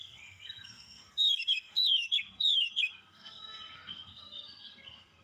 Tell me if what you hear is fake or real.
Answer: fake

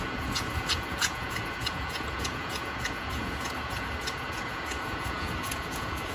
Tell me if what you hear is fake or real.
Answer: fake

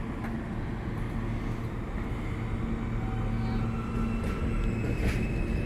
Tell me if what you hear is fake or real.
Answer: real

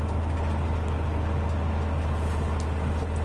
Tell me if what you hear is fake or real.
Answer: real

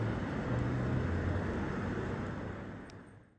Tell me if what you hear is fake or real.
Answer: real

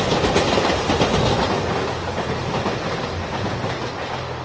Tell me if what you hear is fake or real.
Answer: real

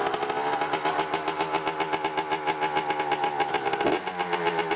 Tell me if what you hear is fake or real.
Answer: real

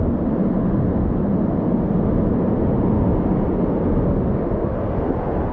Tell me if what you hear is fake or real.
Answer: real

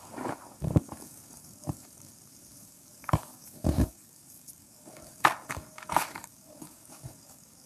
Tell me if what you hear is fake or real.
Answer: fake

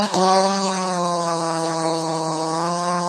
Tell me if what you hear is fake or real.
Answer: fake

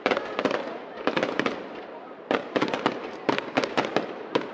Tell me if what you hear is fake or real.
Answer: fake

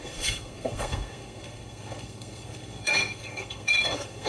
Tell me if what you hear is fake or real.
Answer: fake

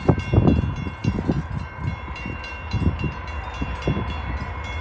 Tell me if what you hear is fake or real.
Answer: fake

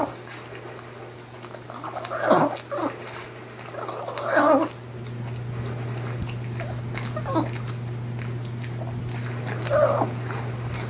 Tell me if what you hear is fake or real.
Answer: real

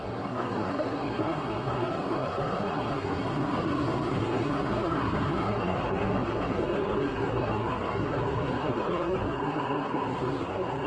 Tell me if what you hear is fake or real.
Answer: fake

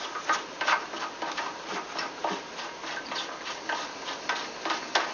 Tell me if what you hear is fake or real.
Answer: real